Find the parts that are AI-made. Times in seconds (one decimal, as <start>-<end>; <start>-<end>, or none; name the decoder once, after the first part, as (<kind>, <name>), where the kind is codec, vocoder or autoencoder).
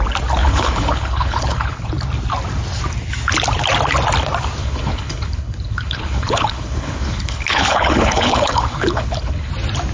0.4-1.9 (codec, HILCodec); 4.6-9.5